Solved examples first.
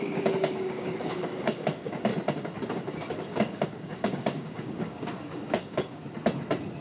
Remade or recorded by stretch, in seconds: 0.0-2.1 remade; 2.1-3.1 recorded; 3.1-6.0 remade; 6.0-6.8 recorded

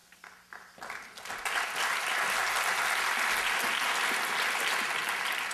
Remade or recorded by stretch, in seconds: 0.0-5.5 recorded

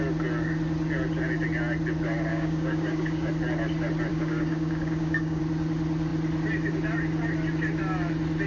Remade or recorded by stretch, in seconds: 0.0-2.3 recorded; 2.3-3.3 remade; 3.3-4.1 recorded; 4.1-5.4 remade; 5.4-8.5 recorded

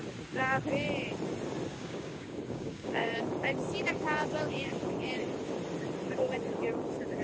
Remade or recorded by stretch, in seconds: 0.0-1.7 recorded; 1.7-3.1 remade; 3.1-7.2 recorded

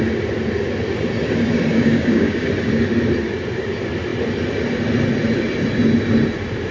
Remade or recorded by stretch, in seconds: 0.0-1.7 recorded; 1.7-2.5 remade; 2.5-6.7 recorded